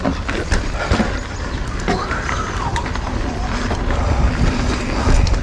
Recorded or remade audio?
recorded